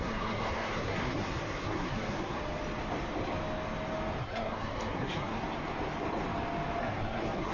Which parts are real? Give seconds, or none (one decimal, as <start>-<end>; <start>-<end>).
2.4-4.2; 5.4-6.8